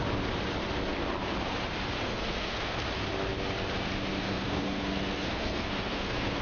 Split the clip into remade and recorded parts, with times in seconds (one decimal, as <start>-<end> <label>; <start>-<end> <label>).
0.0-2.0 recorded; 2.0-2.8 remade; 2.8-4.2 recorded; 4.2-6.4 remade

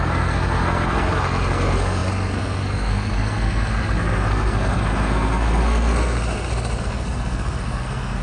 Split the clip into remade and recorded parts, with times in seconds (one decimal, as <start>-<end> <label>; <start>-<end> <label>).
0.0-8.2 remade